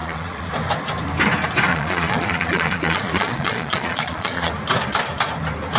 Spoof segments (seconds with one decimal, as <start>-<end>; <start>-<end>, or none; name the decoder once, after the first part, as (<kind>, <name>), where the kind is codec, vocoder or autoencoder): 0.0-0.5 (vocoder, Vocos); 1.7-4.5